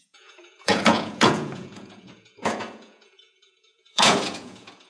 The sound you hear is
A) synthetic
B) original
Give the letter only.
A